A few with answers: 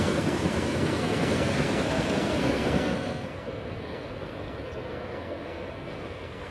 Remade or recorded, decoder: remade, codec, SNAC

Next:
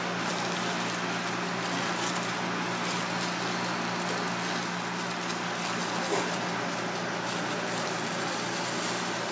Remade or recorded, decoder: recorded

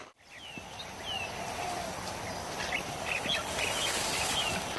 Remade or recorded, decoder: recorded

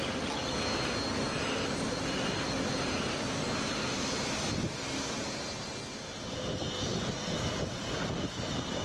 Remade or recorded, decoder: recorded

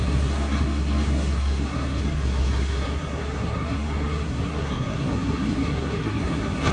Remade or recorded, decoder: remade, codec, SNAC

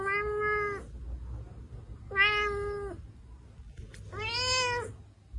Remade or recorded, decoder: recorded